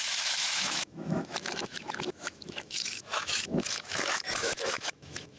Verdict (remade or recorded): remade